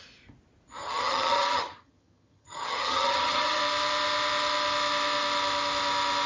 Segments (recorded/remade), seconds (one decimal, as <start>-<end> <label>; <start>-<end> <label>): 0.0-0.8 recorded; 0.8-3.6 remade; 3.6-6.3 recorded